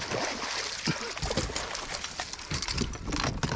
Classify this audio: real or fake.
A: real